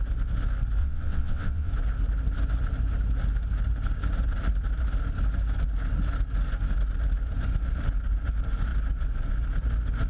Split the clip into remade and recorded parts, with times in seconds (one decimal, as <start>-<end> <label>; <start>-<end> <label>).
0.0-0.8 recorded; 0.8-1.7 remade; 1.7-10.1 recorded